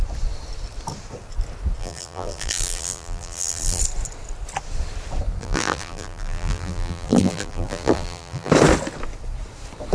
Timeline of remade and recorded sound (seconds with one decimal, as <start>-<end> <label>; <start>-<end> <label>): 0.0-1.8 recorded; 1.8-3.8 remade; 3.8-5.4 recorded; 5.4-8.5 remade; 8.5-9.9 recorded